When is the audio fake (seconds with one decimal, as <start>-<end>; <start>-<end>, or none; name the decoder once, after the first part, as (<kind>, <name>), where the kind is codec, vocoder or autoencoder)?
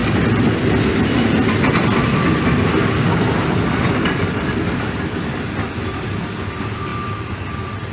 none